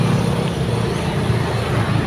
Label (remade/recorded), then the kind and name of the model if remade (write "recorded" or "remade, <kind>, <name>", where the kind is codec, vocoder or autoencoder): recorded